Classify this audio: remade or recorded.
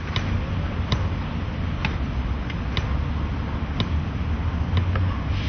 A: recorded